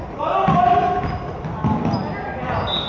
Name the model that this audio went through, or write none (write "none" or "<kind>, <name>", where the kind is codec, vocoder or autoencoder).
none